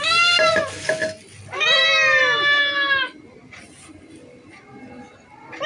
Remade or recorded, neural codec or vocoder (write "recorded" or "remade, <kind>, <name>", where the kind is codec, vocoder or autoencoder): recorded